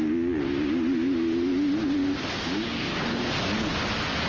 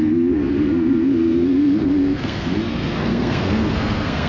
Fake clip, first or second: second